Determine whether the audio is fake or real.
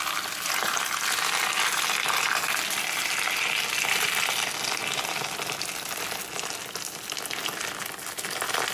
real